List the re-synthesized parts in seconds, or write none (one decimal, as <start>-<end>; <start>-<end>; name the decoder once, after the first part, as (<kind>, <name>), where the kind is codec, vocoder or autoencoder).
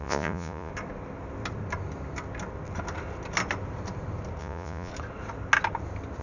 0.0-0.7 (vocoder, Vocos); 4.4-4.9